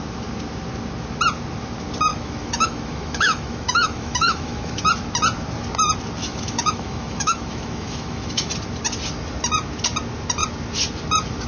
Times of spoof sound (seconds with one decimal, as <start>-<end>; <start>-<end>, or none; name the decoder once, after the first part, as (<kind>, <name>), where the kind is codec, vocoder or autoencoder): 2.1-4.8 (autoencoder, DAC-VAE); 6.2-8.5